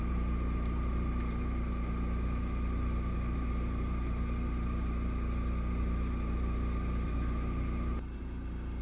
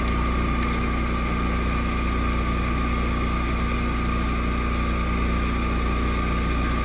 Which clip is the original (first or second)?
second